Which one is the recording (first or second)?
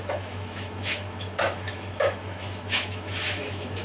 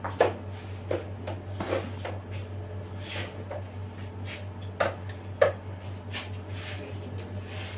second